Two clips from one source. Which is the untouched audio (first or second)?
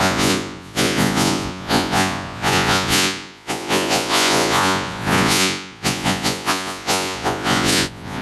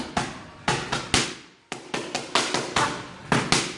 second